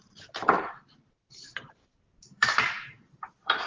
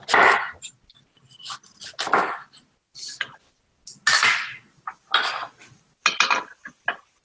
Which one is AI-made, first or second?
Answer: first